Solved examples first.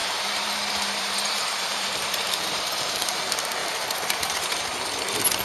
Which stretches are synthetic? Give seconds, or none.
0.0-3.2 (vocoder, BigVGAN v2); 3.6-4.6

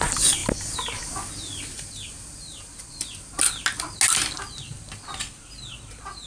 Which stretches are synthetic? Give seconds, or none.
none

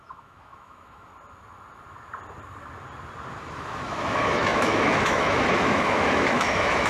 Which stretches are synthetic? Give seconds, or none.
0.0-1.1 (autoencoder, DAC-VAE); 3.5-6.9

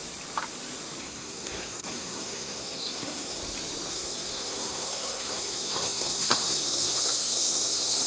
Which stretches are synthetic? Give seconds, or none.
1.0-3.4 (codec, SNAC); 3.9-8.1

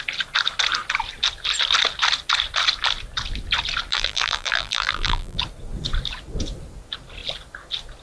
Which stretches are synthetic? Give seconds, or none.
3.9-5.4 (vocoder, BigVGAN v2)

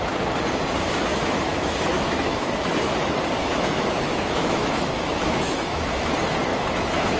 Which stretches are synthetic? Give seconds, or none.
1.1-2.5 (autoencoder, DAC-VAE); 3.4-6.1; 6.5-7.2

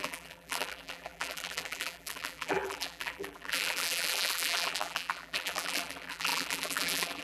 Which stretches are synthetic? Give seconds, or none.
0.0-7.2 (vocoder, BigVGAN v2)